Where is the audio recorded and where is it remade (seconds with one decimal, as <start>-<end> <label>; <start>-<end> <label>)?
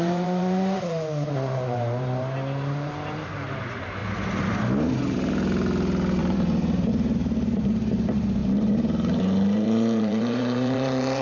0.0-4.0 remade; 4.0-6.2 recorded; 6.2-11.2 remade